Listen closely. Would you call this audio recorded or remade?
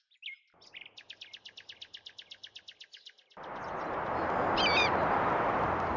recorded